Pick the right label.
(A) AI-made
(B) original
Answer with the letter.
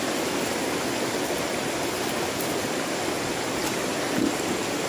B